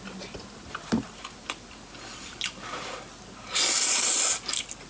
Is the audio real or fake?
real